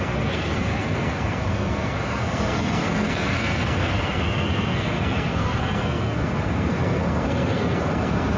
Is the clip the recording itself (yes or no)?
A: no